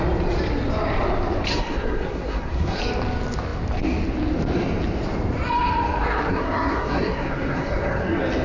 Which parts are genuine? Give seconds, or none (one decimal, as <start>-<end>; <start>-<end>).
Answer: 0.0-1.5; 2.8-6.3; 8.0-8.4